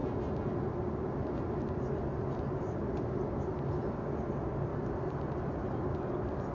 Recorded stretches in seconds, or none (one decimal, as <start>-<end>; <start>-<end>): 0.0-4.7; 5.8-6.5